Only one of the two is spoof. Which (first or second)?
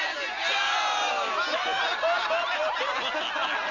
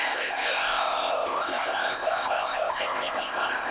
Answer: second